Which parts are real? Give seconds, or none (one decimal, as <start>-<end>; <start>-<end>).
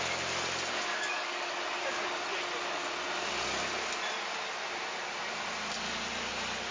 0.0-0.9; 1.6-6.7